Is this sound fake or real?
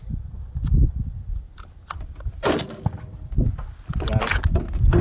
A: real